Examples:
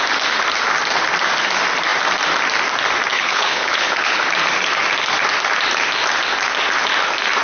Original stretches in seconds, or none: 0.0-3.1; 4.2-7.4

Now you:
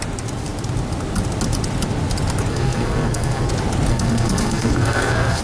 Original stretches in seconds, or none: 0.0-2.5; 3.5-3.9

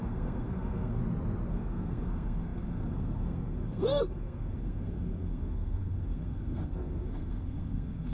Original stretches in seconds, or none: 1.0-1.5